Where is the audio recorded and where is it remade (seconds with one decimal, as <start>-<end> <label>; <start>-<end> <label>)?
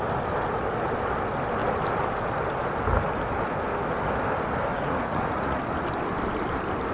0.0-4.7 recorded; 4.7-5.6 remade; 5.6-6.9 recorded